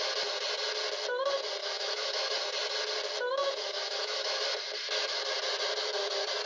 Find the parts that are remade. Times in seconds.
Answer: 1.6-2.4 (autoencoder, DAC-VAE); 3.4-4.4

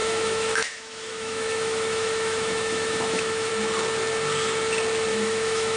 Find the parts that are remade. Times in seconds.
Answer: 0.0-3.5 (autoencoder, DAC-VAE); 5.1-5.8

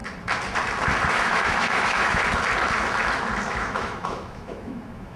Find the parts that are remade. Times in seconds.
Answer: 1.1-2.2 (autoencoder, DAC-VAE); 3.5-5.2

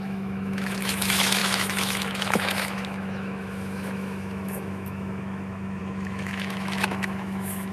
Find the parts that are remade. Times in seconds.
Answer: 0.0-7.7 (autoencoder, DAC-VAE)

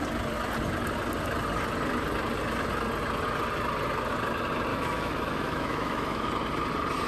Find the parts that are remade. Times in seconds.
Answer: 4.7-6.3 (autoencoder, DAC-VAE)

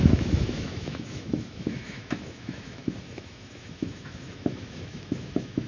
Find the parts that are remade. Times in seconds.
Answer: 0.0-5.7 (autoencoder, DAC-VAE)

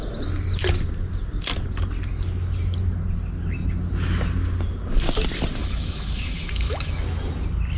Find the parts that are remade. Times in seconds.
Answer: 5.6-7.0 (autoencoder, DAC-VAE)

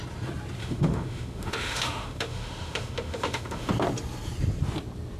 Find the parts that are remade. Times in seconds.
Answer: 0.6-3.7 (autoencoder, DAC-VAE)